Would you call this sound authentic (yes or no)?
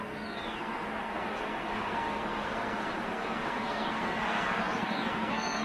no